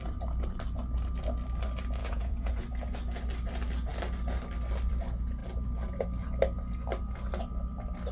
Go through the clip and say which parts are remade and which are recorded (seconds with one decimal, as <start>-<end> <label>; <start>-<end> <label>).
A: 0.0-2.0 recorded; 2.0-2.5 remade; 2.5-8.1 recorded